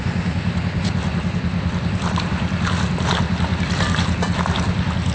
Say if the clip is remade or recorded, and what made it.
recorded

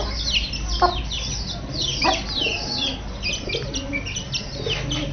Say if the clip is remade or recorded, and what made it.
recorded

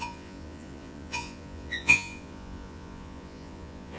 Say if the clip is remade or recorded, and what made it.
remade, vocoder, Vocos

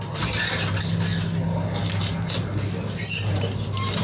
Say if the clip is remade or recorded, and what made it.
recorded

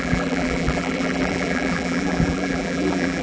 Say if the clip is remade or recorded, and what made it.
remade, vocoder, BigVGAN v2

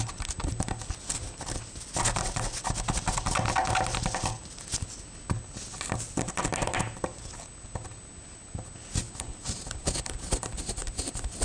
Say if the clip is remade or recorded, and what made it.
recorded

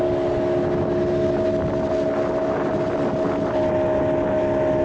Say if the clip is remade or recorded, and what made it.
recorded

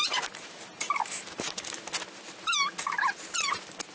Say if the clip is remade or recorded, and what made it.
recorded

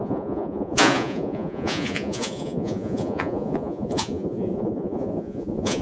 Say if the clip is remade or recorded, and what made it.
remade, vocoder, Vocos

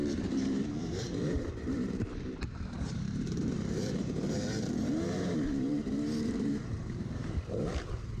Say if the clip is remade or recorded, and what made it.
remade, vocoder, BigVGAN v2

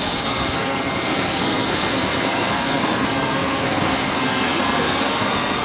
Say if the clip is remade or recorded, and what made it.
remade, codec, SNAC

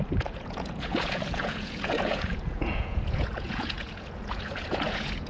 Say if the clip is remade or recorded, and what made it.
remade, vocoder, Vocos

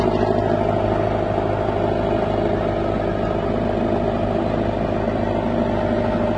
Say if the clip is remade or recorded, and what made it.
recorded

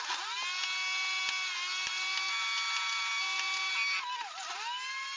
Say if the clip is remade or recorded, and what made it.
recorded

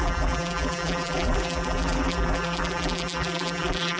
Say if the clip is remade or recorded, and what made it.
remade, vocoder, BigVGAN v2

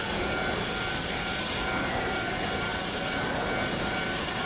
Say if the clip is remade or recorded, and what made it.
recorded